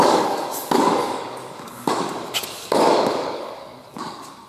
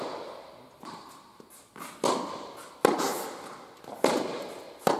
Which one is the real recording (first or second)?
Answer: second